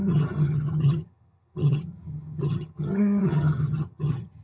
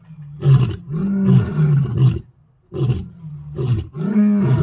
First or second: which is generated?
first